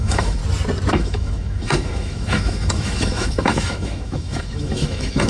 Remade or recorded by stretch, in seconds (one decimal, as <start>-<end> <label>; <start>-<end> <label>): 0.0-0.4 remade; 0.4-0.9 recorded; 0.9-5.3 remade